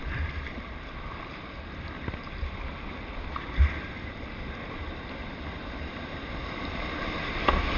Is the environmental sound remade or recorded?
recorded